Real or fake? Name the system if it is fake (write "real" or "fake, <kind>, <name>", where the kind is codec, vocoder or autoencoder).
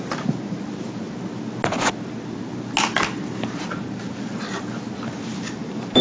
real